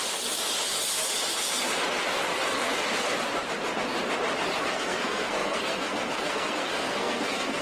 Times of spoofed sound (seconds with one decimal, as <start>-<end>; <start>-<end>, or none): 4.6-7.6